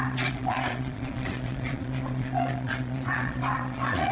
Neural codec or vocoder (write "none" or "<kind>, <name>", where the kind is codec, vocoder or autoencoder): vocoder, Vocos